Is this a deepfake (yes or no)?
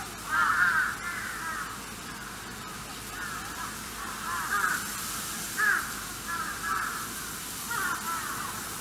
yes